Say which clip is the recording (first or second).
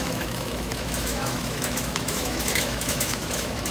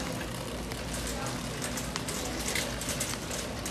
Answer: second